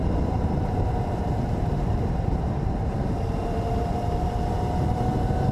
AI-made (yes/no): yes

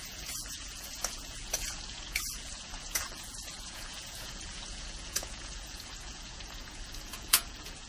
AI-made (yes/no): yes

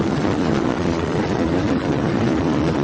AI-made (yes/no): yes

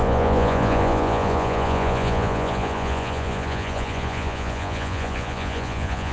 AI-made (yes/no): yes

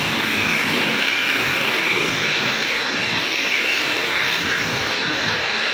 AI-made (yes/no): yes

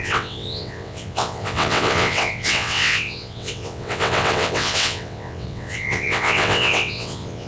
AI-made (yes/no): yes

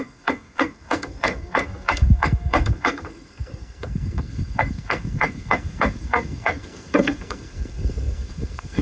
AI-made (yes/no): yes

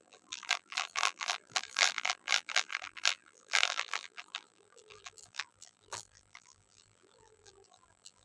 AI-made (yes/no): yes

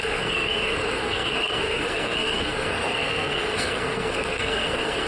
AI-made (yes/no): yes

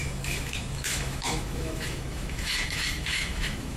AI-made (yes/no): yes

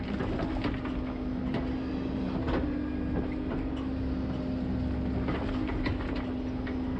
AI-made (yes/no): no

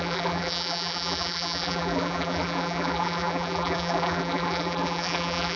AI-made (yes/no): yes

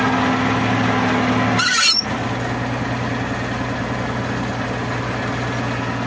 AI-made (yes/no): no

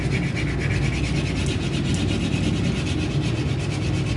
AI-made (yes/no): no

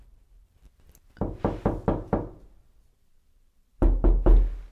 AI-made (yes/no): no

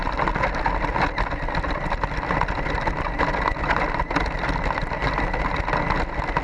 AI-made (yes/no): no